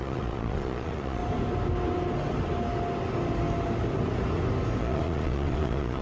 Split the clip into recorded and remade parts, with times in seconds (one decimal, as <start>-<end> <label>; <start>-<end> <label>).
0.0-1.2 remade; 1.2-4.8 recorded; 4.8-6.0 remade